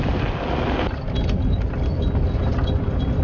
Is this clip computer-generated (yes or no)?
no